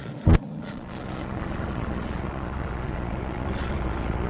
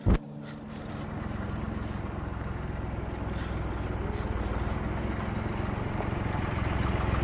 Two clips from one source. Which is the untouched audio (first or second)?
second